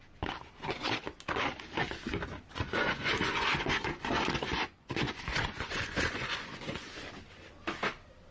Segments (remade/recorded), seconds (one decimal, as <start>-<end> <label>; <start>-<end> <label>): 0.0-2.5 recorded; 2.5-7.1 remade; 7.1-8.3 recorded